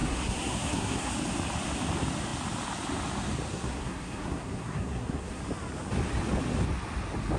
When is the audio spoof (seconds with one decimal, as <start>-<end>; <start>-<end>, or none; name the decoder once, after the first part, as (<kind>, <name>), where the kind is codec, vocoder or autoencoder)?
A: 0.0-1.1 (codec, SNAC); 3.5-5.4